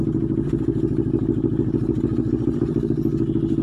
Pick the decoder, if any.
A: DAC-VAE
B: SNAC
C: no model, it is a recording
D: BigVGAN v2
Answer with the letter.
C